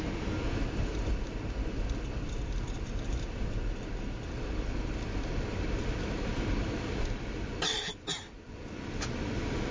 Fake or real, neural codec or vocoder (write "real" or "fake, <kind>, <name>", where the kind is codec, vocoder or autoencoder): real